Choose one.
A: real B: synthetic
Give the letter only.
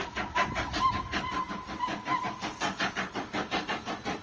B